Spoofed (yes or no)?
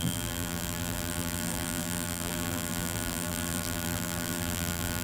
yes